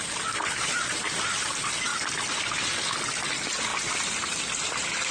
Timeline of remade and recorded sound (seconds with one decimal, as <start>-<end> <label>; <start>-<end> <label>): 0.0-5.1 recorded